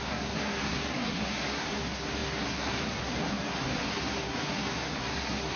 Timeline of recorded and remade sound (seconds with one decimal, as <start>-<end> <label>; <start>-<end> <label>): 0.0-5.6 remade